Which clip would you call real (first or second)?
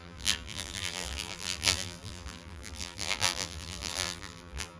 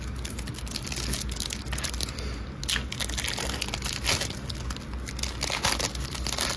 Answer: second